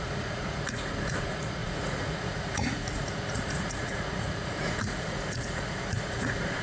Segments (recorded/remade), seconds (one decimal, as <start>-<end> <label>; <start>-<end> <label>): 0.0-6.6 remade